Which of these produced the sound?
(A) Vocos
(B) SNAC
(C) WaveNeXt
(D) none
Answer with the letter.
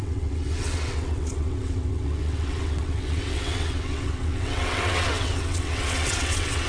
C